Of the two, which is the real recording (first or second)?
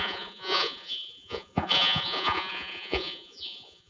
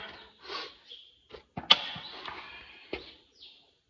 second